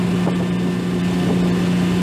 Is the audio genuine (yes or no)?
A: yes